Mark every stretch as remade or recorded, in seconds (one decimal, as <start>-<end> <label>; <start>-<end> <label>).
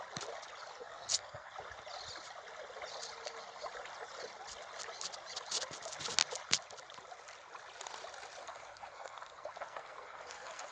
0.0-0.7 recorded; 0.7-1.5 remade; 1.5-8.4 recorded; 8.4-10.7 remade